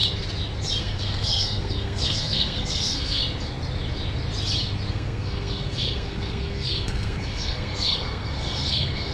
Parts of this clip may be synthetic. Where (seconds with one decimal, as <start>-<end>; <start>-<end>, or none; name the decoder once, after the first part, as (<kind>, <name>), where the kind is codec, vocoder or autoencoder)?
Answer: 0.8-3.2 (codec, SNAC); 4.9-9.1